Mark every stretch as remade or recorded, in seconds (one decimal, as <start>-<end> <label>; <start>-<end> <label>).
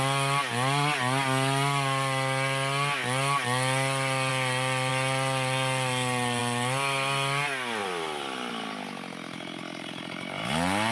0.0-7.8 recorded; 7.8-8.8 remade; 8.8-10.9 recorded